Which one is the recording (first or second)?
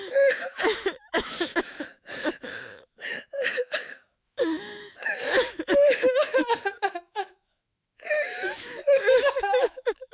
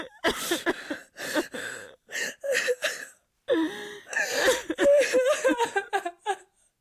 second